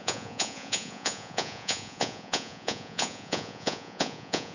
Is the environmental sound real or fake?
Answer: fake